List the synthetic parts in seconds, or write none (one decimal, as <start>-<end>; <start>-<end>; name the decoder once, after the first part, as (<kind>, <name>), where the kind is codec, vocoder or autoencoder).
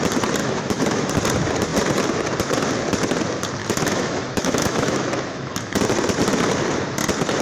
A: 0.4-1.1 (autoencoder, DAC-VAE); 3.6-5.8